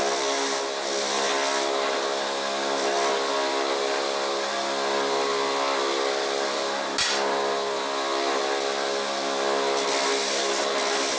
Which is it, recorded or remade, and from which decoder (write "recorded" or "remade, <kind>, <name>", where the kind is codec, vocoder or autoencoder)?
recorded